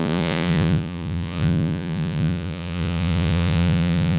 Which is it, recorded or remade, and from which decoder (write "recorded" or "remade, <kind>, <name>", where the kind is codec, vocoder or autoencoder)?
remade, vocoder, Vocos